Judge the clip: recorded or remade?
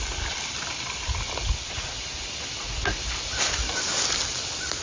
recorded